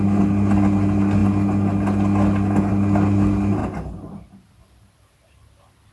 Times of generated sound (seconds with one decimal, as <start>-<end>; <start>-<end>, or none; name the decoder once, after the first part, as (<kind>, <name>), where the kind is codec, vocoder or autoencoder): none